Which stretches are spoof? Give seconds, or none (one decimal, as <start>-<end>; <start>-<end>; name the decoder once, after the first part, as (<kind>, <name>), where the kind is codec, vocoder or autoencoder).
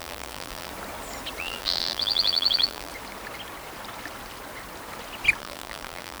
0.0-0.7 (vocoder, BigVGAN v2); 1.4-2.9; 5.4-6.2